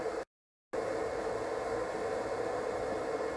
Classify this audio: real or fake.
real